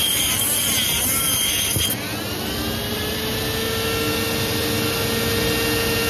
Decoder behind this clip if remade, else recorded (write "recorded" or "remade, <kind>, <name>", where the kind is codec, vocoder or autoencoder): recorded